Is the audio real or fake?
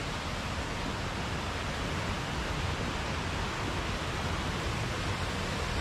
real